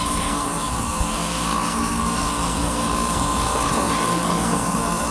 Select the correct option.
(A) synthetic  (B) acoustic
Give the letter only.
A